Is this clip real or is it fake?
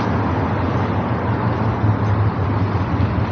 real